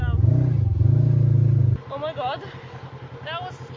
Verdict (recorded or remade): recorded